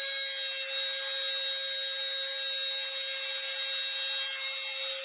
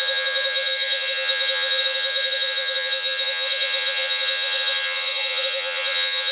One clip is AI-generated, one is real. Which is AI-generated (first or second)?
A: second